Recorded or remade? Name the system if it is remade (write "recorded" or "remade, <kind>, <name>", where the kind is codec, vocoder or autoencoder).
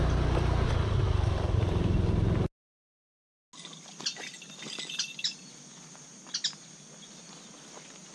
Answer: recorded